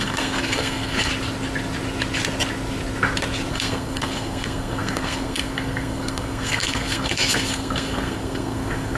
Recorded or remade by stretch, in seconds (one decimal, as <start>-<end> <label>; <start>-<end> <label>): 0.0-1.1 remade; 1.1-3.5 recorded; 3.5-9.0 remade